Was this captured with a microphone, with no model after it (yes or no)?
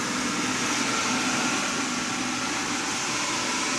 yes